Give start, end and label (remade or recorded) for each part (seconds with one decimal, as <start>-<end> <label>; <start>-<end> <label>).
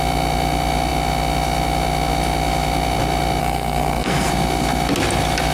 0.0-3.4 recorded; 3.4-4.3 remade; 4.3-5.5 recorded